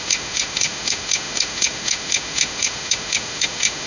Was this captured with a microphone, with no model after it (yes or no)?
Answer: no